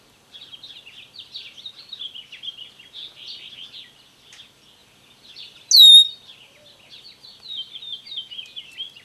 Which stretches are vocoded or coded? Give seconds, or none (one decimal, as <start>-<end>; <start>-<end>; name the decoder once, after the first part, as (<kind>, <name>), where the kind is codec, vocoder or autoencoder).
none